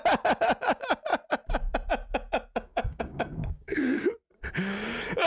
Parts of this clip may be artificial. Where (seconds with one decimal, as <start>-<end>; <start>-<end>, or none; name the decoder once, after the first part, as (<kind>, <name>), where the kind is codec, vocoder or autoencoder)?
2.7-4.0 (codec, DAC)